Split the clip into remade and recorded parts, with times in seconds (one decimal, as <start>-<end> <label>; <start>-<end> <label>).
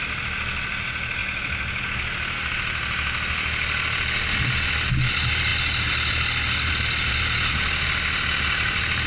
0.0-9.1 recorded